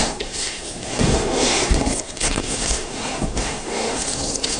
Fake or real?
fake